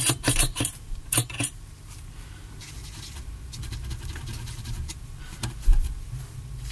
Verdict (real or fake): fake